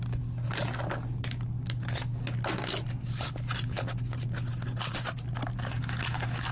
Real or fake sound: real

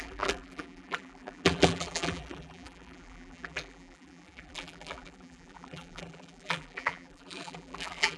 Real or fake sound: fake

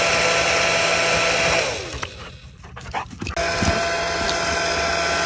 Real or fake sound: real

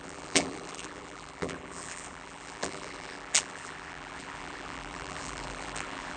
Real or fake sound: fake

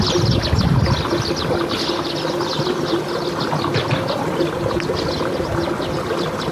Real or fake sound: real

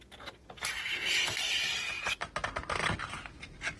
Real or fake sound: real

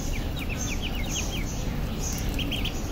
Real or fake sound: real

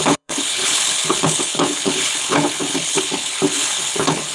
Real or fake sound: fake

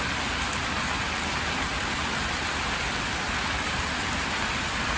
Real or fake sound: real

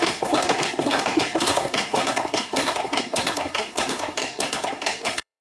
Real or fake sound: fake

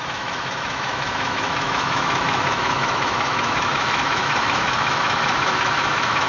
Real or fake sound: fake